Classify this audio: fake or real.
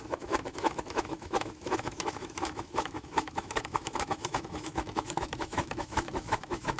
fake